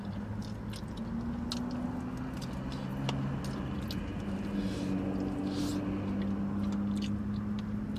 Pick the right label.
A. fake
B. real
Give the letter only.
B